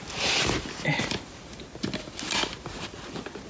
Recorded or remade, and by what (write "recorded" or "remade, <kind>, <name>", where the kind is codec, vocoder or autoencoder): recorded